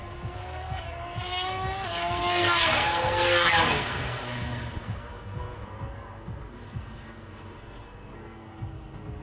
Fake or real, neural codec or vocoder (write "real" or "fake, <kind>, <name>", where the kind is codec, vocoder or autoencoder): fake, codec, SNAC